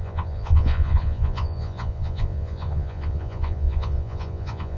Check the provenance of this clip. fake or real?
fake